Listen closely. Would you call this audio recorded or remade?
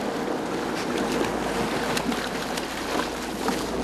recorded